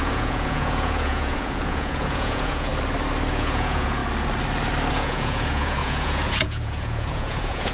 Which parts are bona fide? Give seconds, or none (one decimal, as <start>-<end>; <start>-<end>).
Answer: 2.7-3.3; 4.0-4.9

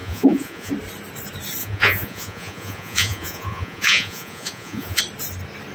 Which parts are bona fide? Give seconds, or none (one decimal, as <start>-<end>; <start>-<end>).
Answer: 0.7-1.6; 5.0-5.7

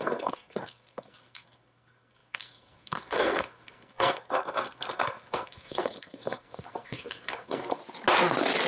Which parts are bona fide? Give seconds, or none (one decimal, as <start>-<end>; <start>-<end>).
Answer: 7.8-8.7